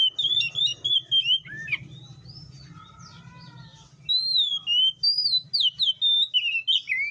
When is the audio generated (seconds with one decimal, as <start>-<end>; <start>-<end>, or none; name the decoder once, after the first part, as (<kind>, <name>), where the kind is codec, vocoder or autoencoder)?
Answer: none